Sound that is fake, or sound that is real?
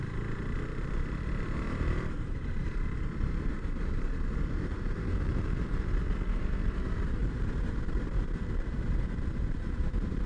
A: fake